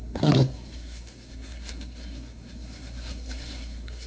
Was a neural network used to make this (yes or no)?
yes